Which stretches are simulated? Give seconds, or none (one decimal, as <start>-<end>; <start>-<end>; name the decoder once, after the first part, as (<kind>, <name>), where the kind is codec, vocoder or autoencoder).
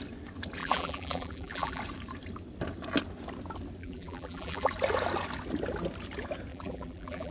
0.6-1.8 (vocoder, BigVGAN v2); 3.8-4.7; 6.5-7.3